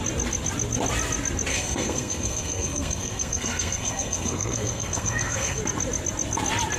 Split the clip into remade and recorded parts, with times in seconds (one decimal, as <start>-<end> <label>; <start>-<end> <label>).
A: 0.0-1.5 recorded; 1.5-5.6 remade; 5.6-6.8 recorded